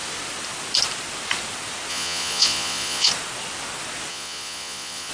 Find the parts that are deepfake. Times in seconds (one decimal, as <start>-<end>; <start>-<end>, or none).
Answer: 1.9-3.1; 4.1-5.1